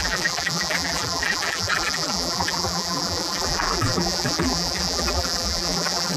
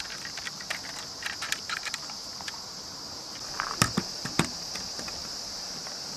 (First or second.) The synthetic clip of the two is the first